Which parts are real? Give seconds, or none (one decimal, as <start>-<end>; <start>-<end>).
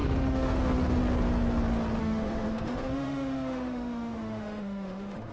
0.6-2.0